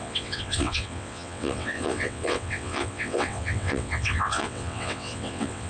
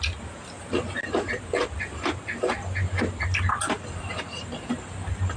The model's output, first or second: first